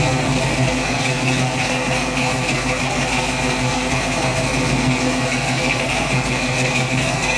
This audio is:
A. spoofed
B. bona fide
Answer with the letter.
A